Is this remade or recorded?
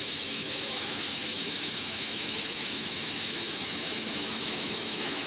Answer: remade